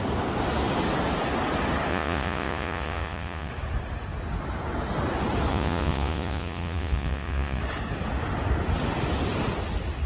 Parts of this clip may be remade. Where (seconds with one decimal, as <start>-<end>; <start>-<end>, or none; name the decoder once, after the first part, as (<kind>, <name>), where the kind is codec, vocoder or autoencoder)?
1.9-3.5 (vocoder, Vocos); 5.5-7.6